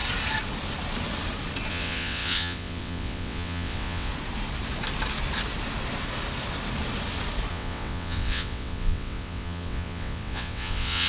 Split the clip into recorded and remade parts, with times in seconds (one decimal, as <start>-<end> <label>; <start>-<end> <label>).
0.0-1.7 recorded; 1.7-4.1 remade; 4.1-7.5 recorded; 7.5-11.1 remade